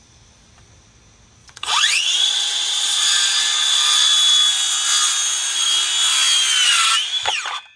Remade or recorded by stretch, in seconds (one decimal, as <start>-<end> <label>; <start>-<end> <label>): 0.0-1.4 recorded; 1.4-3.1 remade; 3.1-7.8 recorded